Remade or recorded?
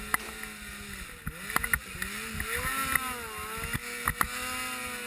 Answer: recorded